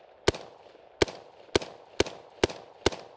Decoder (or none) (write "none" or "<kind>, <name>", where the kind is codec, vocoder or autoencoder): none